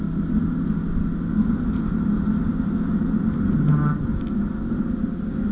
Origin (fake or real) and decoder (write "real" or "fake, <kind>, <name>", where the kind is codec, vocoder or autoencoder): real